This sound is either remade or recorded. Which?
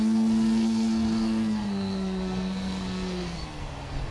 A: remade